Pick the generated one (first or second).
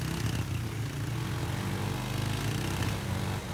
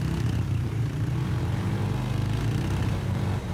second